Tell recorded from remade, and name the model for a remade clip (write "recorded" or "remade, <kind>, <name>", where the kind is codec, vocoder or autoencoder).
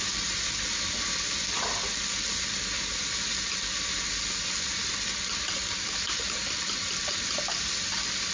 recorded